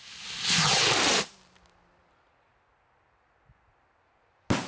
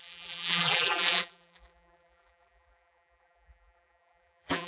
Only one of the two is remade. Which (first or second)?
second